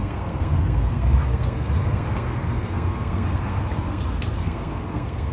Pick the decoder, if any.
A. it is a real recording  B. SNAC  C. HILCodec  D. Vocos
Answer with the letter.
B